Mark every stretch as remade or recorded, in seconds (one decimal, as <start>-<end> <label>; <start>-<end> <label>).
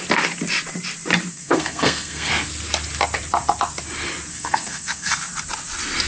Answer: 0.0-1.3 recorded; 1.3-2.3 remade; 2.3-4.3 recorded; 4.3-5.3 remade; 5.3-6.1 recorded